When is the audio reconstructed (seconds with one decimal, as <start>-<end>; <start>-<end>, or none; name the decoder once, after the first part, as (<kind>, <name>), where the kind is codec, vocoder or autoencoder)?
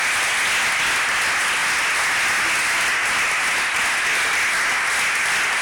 none